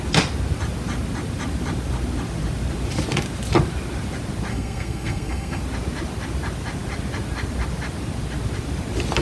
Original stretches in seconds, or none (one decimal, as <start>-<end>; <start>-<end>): 0.0-4.5; 5.6-9.2